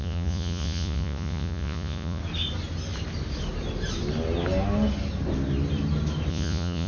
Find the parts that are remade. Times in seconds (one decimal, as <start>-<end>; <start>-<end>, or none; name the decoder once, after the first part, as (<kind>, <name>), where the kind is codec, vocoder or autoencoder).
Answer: 0.0-2.2 (vocoder, Vocos); 6.3-6.9